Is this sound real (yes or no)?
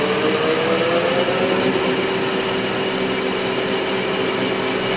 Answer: yes